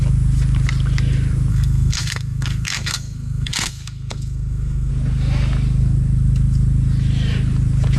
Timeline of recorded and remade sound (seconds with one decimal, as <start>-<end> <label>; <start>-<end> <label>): 0.0-1.5 recorded; 1.5-4.9 remade; 4.9-8.0 recorded